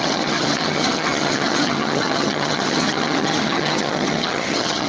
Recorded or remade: remade